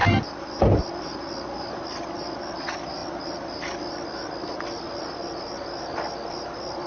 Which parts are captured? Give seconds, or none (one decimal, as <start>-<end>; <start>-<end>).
0.0-6.9